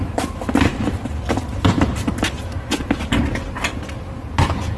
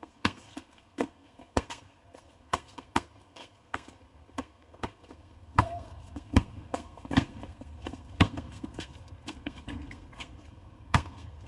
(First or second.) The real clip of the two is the first